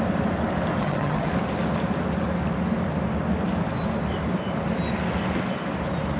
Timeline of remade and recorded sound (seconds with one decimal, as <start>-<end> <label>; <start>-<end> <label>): 0.0-0.8 recorded; 0.8-1.3 remade; 1.3-6.2 recorded